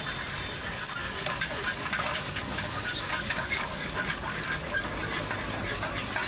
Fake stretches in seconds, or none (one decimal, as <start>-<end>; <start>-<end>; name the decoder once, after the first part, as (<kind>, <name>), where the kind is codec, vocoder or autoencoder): 1.0-4.8 (codec, DAC)